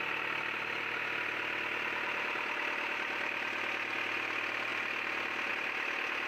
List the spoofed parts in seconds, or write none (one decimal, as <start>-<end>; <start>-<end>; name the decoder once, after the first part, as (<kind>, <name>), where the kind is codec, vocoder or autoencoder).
none